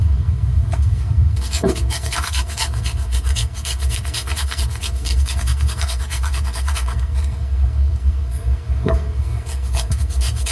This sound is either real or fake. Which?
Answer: fake